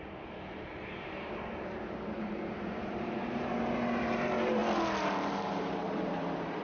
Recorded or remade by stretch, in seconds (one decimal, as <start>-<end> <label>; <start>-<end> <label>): 0.0-4.6 remade; 4.6-5.6 recorded; 5.6-6.6 remade